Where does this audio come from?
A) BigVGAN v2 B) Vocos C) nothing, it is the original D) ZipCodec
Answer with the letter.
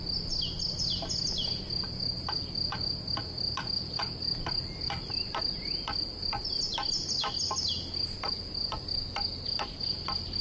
C